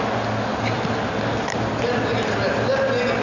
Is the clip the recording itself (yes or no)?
yes